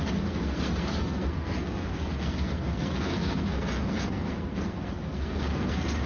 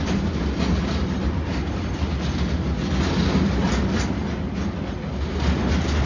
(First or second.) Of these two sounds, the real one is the second